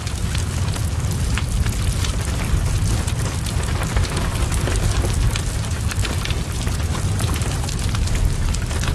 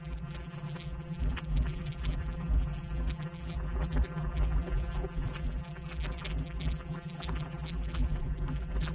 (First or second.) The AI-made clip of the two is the second